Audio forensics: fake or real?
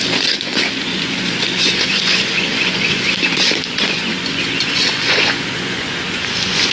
fake